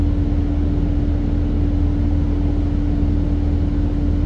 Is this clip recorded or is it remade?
recorded